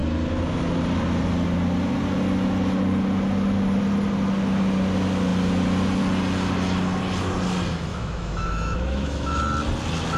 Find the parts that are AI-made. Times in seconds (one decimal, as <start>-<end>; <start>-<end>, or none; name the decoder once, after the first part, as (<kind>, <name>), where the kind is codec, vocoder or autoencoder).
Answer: 7.9-9.4 (autoencoder, DAC-VAE)